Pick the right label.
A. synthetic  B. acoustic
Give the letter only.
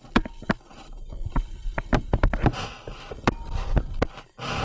B